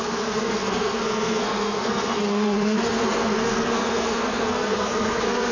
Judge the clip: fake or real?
fake